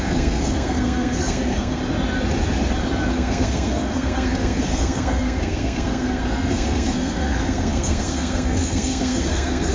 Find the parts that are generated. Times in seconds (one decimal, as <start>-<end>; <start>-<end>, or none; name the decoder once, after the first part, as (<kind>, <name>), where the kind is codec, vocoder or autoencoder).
0.0-1.8 (codec, SNAC); 3.1-9.7